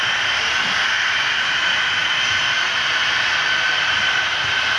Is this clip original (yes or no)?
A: yes